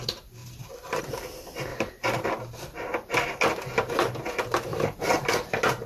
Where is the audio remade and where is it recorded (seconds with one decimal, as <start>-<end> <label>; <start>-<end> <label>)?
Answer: 0.0-0.4 recorded; 0.4-1.0 remade; 1.0-1.7 recorded; 1.7-2.3 remade; 2.3-4.7 recorded; 4.7-5.3 remade; 5.3-5.9 recorded